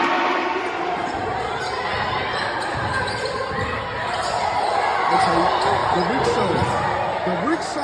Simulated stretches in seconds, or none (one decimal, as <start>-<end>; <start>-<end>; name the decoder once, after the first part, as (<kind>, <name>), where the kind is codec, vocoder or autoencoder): 0.4-3.5 (vocoder, BigVGAN v2); 5.8-6.7